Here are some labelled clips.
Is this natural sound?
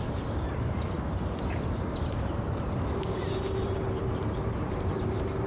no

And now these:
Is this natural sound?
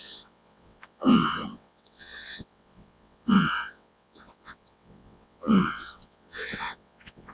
no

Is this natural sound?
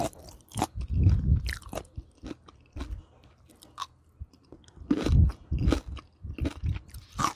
yes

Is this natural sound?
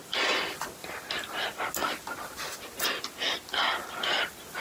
yes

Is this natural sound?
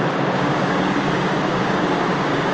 no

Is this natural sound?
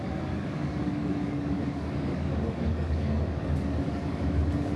no